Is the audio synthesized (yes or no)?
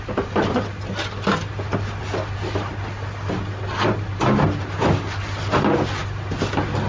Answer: no